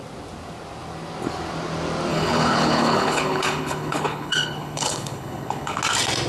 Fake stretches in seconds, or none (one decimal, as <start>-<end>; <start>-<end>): 2.1-5.8